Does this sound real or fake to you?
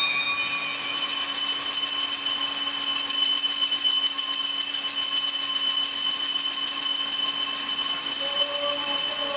real